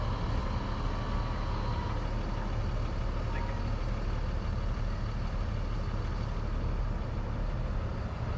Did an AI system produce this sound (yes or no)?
no